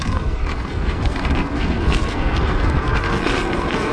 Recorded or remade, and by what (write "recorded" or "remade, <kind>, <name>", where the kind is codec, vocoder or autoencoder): remade, codec, SNAC